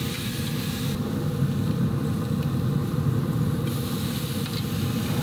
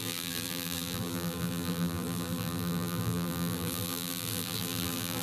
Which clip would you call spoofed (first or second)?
second